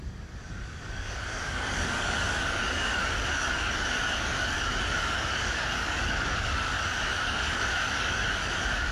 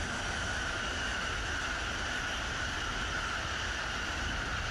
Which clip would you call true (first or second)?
second